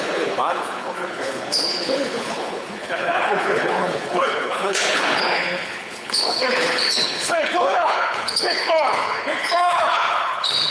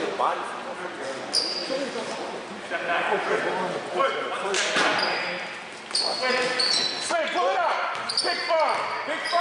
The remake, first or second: first